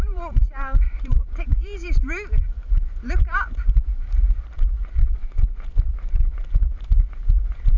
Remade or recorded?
remade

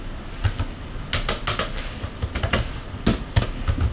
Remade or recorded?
recorded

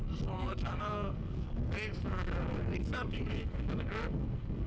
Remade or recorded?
remade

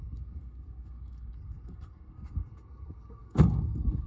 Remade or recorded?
remade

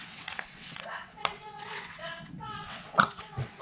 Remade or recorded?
remade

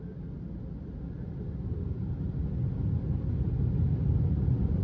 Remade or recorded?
recorded